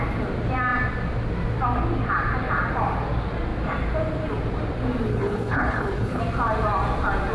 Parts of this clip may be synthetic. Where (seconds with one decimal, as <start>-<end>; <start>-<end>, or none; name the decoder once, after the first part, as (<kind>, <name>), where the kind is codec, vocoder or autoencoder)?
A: 5.1-6.2 (codec, HILCodec)